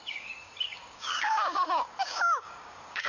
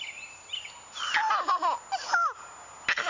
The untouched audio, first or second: second